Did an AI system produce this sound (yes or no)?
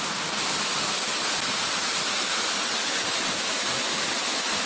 no